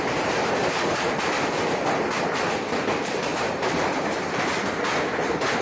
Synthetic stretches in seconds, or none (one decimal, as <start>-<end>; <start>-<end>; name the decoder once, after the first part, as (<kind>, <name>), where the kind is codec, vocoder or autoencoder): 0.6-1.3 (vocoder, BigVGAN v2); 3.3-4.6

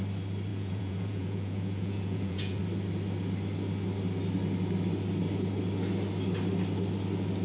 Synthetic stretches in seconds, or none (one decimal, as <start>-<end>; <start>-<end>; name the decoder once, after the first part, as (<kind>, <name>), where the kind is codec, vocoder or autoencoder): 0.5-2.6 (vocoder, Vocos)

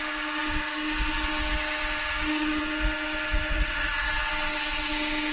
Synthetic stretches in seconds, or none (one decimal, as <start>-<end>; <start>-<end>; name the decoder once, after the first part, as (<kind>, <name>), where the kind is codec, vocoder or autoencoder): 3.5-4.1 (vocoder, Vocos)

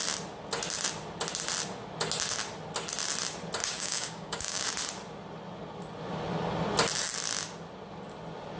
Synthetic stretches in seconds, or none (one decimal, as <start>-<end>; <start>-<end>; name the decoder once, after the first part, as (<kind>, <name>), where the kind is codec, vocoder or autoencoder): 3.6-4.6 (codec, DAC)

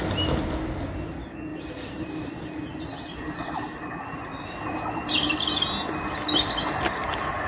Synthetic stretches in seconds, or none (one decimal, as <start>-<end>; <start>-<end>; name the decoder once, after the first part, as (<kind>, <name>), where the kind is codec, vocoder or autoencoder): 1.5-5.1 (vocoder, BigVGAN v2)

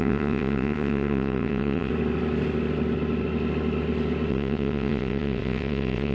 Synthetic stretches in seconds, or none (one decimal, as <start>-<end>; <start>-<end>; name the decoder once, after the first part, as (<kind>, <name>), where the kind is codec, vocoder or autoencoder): 0.0-1.9 (vocoder, WaveNeXt); 4.3-6.1